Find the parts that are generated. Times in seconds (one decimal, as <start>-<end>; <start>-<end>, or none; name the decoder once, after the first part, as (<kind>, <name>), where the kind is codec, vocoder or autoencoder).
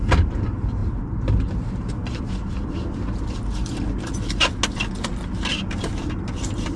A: none